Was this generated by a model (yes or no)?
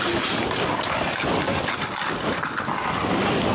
yes